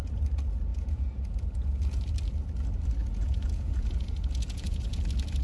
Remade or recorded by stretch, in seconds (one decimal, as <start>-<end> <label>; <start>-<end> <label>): 0.0-0.7 recorded; 0.7-2.0 remade; 2.0-3.0 recorded; 3.0-5.0 remade; 5.0-5.4 recorded